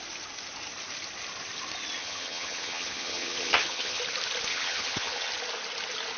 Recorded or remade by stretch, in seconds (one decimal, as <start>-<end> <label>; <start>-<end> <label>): 0.0-2.0 recorded; 2.0-4.0 remade; 4.0-4.5 recorded; 4.5-5.3 remade; 5.3-6.2 recorded